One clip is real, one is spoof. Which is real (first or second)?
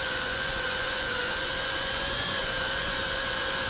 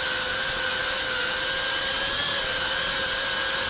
second